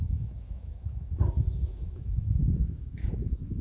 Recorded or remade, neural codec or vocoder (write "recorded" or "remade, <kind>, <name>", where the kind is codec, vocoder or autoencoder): remade, autoencoder, DAC-VAE